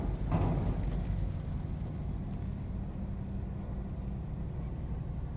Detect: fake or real real